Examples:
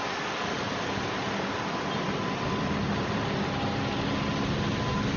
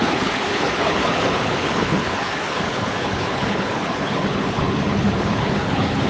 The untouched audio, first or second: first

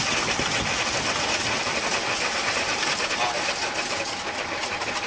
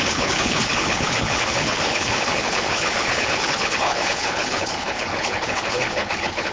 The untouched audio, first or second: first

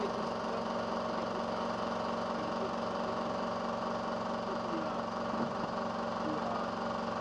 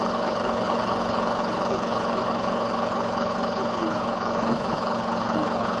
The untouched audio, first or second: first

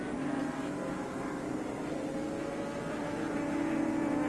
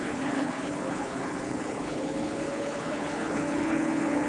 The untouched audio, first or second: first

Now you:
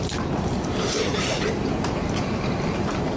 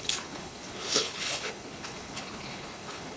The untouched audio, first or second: first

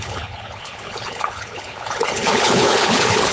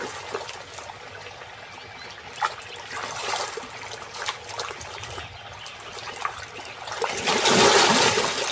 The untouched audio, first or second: second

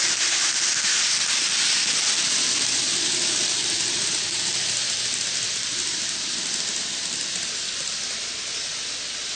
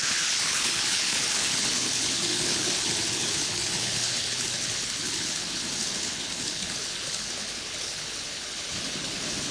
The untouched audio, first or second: first